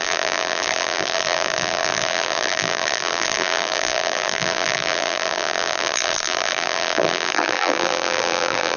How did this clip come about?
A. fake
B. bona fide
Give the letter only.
A